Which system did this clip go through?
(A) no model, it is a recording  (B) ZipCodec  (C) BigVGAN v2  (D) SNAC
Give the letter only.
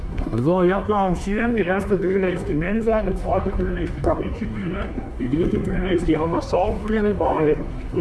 D